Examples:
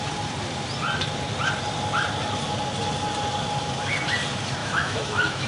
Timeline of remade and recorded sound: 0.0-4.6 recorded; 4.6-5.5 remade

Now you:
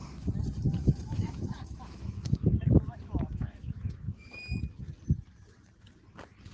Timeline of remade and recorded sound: 0.0-0.7 recorded; 0.7-4.6 remade; 4.6-6.5 recorded

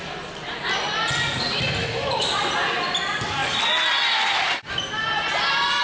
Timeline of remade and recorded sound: 0.0-1.8 recorded; 1.8-2.3 remade; 2.3-5.8 recorded

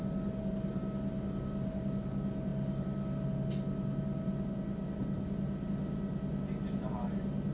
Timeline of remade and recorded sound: 0.0-7.5 recorded

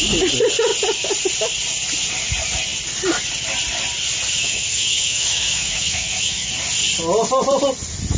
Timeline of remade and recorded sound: 0.0-4.4 recorded; 4.4-6.5 remade; 6.5-8.2 recorded